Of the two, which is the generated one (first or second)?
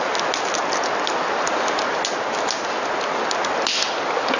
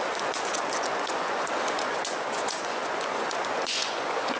second